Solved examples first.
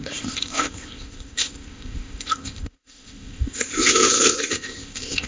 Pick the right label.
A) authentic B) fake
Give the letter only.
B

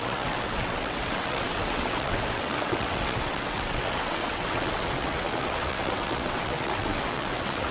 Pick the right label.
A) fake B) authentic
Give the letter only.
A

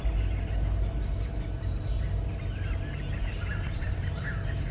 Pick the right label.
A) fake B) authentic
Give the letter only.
B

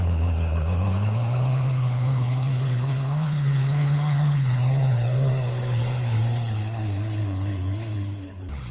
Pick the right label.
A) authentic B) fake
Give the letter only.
B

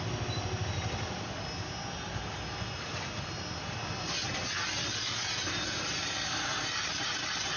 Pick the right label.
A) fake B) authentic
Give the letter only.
B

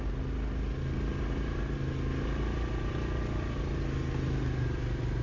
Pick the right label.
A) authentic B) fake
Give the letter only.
A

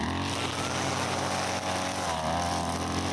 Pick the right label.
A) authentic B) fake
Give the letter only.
A